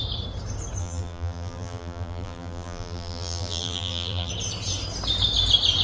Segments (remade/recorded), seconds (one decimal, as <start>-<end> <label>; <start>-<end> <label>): 0.0-0.8 recorded; 0.8-4.3 remade; 4.3-5.8 recorded